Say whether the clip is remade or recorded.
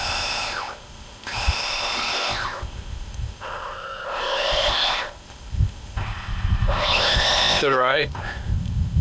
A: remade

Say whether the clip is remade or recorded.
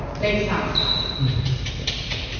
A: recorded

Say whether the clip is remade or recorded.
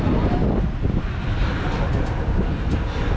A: recorded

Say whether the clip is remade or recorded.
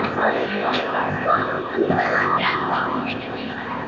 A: remade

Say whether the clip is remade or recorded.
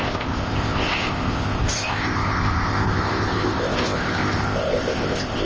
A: remade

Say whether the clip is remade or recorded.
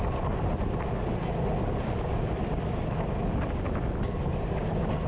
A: recorded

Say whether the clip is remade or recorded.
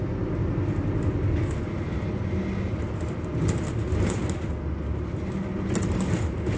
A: recorded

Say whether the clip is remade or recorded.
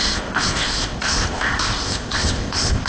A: remade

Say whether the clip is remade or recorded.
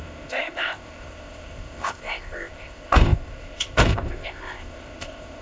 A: remade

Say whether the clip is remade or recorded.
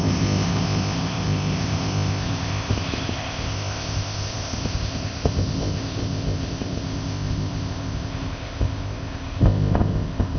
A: remade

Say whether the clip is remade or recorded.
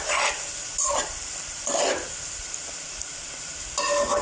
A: recorded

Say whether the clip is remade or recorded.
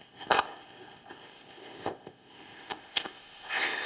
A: remade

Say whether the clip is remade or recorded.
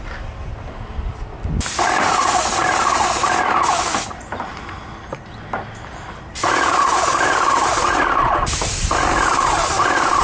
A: recorded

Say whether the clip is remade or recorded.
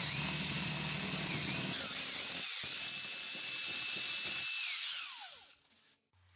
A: recorded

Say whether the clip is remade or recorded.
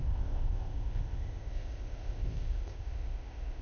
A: remade